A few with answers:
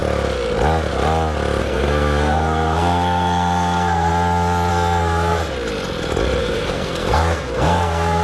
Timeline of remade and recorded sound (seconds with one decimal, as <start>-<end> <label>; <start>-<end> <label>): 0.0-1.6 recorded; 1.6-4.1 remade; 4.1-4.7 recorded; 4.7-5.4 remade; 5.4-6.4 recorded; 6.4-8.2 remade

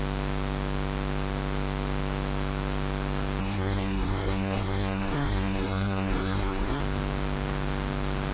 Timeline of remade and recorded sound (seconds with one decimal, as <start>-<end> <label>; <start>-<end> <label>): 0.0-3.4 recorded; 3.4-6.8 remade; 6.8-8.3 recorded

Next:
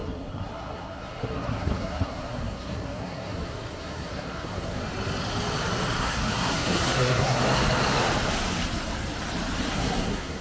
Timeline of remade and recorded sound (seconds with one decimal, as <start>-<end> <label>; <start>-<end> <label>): 0.0-4.8 remade; 4.8-6.0 recorded; 6.0-7.4 remade; 7.4-9.7 recorded; 9.7-10.4 remade